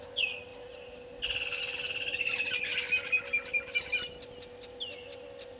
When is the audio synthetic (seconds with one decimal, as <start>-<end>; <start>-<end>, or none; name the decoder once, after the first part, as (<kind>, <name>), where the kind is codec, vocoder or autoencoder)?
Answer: none